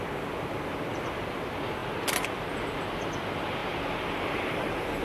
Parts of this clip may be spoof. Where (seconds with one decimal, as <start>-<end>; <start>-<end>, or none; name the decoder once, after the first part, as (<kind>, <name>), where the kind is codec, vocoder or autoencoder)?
none